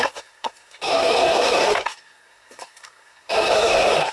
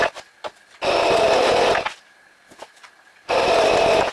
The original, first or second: second